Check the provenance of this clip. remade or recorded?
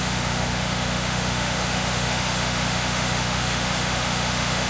remade